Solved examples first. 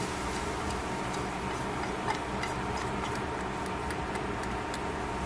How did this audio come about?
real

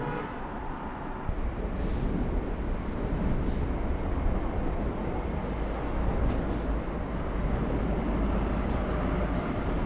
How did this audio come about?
real